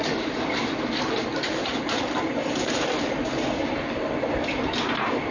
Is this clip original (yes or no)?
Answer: yes